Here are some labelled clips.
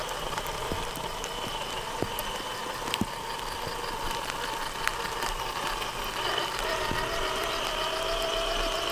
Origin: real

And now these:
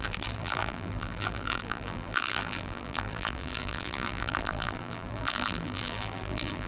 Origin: fake